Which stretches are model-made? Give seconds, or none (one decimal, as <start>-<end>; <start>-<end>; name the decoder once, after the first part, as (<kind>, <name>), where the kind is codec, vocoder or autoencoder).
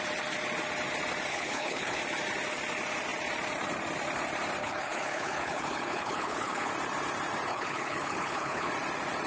1.3-2.0 (codec, HILCodec); 4.6-6.7; 7.5-8.7